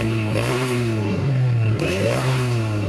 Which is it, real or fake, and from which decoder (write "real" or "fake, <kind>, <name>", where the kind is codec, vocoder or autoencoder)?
fake, codec, SNAC